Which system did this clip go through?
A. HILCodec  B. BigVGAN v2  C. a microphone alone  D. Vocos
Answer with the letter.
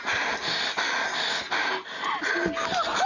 C